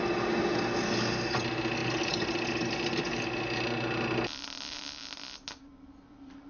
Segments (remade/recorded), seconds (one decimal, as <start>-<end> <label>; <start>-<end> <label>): 0.0-1.8 recorded; 1.8-2.6 remade; 2.6-6.5 recorded